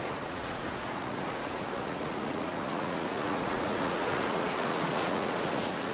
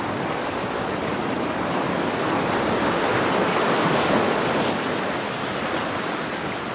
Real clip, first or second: second